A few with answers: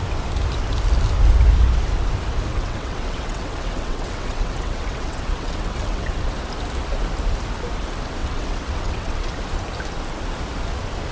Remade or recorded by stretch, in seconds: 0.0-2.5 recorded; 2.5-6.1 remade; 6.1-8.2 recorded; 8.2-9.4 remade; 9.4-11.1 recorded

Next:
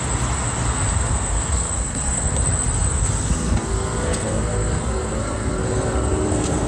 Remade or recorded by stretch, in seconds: 0.0-0.9 recorded; 0.9-2.3 remade; 2.3-3.3 recorded; 3.3-6.7 remade